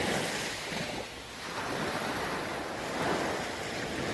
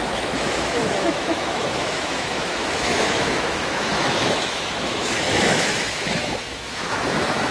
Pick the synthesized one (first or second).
second